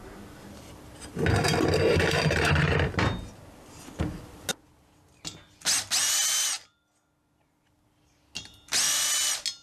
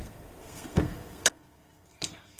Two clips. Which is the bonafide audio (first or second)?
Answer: first